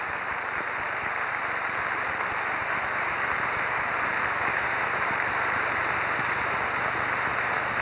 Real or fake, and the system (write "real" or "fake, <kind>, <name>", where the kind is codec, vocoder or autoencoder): real